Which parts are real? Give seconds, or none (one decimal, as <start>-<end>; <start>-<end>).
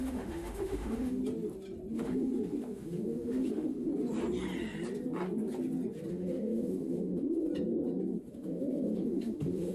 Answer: 1.2-1.9; 3.9-6.1; 7.5-8.3